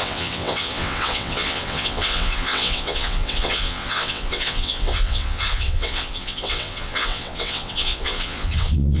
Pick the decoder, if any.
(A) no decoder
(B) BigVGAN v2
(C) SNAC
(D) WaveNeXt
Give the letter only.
D